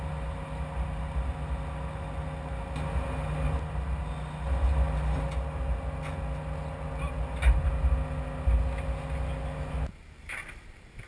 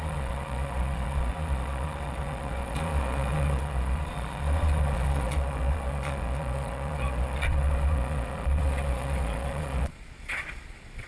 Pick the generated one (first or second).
second